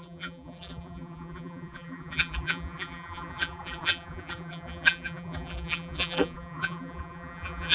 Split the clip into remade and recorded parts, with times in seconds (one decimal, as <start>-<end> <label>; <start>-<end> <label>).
0.0-7.7 remade